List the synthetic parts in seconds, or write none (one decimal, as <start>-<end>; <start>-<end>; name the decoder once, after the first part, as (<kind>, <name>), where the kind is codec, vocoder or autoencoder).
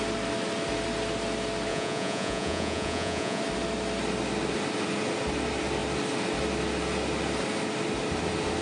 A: 1.7-3.4 (vocoder, Vocos)